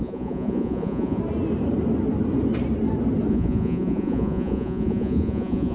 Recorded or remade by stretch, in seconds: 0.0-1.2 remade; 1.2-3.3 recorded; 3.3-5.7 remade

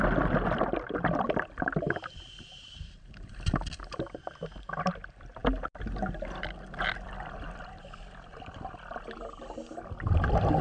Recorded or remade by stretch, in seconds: 0.0-10.6 recorded

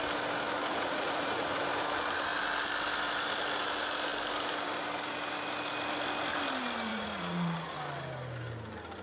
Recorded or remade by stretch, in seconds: 0.0-0.6 recorded; 0.6-1.6 remade; 1.6-6.9 recorded; 6.9-7.8 remade; 7.8-9.0 recorded

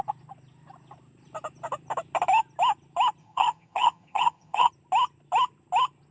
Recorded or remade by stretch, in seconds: 0.0-3.2 recorded; 3.2-4.7 remade; 4.7-6.1 recorded

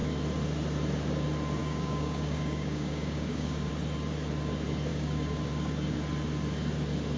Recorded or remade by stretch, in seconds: 0.0-1.6 recorded; 1.6-3.7 remade; 3.7-4.9 recorded; 4.9-5.5 remade; 5.5-7.2 recorded

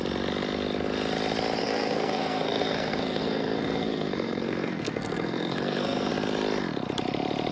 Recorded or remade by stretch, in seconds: 0.0-1.6 recorded; 1.6-6.1 remade; 6.1-7.5 recorded

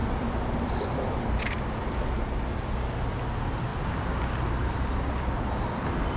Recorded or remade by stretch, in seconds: 0.0-2.1 remade; 2.1-3.7 recorded; 3.7-6.2 remade

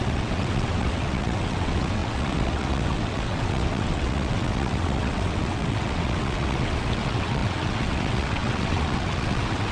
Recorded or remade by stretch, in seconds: 0.0-9.7 remade